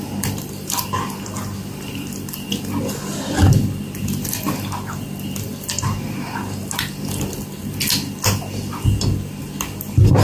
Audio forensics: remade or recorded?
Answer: recorded